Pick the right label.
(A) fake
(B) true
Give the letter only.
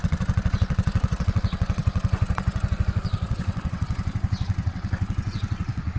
A